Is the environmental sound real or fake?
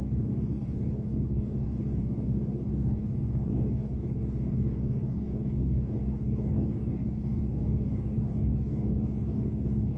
fake